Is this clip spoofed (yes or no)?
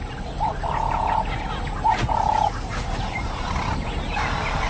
no